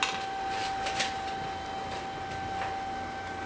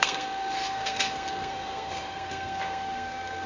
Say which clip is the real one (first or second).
first